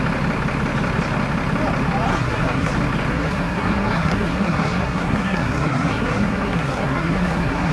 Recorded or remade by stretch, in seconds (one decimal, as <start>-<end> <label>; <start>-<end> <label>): 0.0-2.1 recorded; 2.1-2.7 remade; 2.7-3.1 recorded; 3.1-7.7 remade